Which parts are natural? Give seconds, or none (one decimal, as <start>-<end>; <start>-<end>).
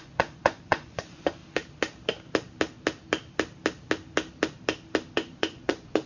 1.4-5.1